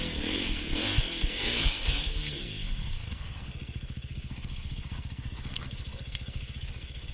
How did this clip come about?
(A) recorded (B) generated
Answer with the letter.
B